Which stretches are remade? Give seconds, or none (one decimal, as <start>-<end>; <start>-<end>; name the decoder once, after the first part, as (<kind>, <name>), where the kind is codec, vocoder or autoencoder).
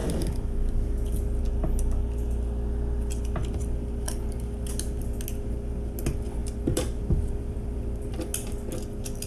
0.0-1.4 (vocoder, BigVGAN v2); 6.4-8.0